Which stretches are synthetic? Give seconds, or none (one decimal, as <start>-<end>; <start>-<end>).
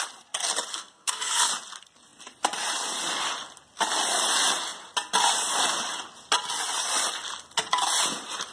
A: 0.7-1.5